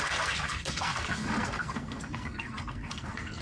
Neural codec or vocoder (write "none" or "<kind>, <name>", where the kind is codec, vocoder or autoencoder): codec, SNAC